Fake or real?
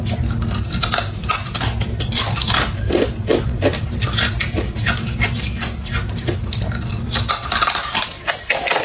real